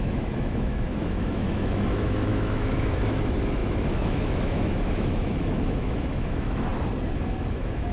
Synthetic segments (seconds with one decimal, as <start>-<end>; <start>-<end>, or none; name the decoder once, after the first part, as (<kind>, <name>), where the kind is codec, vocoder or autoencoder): 0.0-6.7 (autoencoder, DAC-VAE); 7.5-7.9